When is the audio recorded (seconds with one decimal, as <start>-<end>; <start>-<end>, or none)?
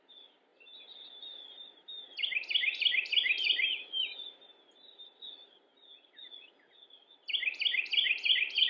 0.0-8.7